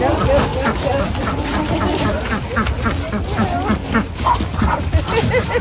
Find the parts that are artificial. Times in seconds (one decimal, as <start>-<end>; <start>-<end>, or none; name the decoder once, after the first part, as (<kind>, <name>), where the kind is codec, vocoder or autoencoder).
none

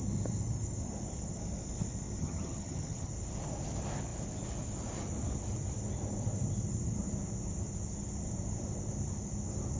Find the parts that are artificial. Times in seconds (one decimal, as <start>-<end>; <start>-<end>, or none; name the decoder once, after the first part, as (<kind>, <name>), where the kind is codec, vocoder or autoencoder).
2.2-3.1 (vocoder, HiFi-GAN)

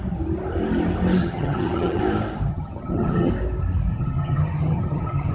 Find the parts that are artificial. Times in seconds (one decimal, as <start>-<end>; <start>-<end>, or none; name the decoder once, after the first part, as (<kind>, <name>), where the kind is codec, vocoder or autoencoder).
1.2-2.0 (vocoder, HiFi-GAN); 2.5-3.3; 3.9-5.3

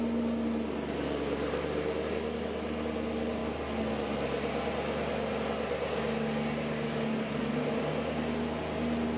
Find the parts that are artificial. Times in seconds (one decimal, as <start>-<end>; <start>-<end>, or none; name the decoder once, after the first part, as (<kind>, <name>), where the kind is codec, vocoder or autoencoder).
none

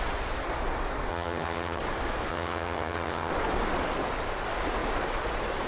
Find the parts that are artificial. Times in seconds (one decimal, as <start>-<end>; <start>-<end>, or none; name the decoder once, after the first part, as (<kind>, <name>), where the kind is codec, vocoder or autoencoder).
1.1-1.8 (vocoder, HiFi-GAN); 2.3-3.3